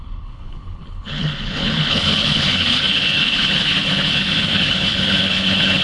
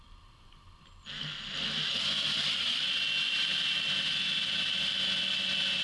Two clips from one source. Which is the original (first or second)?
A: second